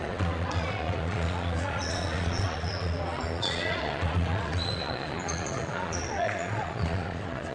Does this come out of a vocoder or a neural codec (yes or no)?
yes